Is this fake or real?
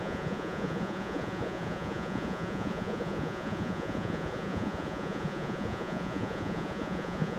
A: fake